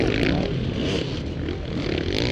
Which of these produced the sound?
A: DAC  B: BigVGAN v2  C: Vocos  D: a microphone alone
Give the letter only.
D